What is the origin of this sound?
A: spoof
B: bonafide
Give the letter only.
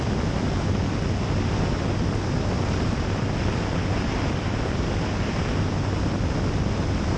B